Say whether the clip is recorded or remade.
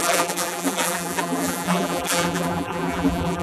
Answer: remade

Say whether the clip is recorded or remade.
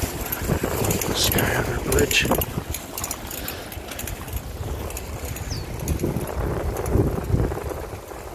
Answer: recorded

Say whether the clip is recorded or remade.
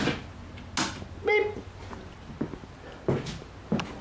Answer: recorded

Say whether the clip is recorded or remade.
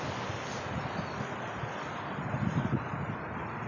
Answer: recorded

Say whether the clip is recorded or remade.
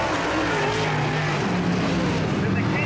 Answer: recorded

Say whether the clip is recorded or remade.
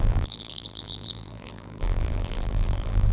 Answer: remade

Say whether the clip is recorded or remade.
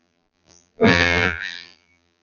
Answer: remade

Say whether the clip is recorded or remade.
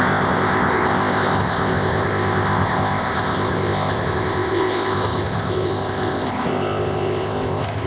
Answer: remade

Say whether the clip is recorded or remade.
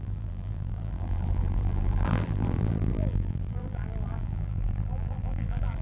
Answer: remade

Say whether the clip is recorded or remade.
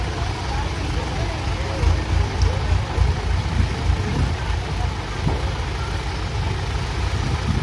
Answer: recorded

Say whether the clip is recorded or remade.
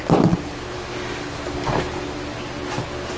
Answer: recorded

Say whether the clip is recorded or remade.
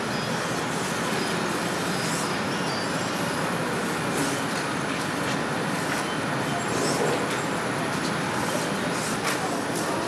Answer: recorded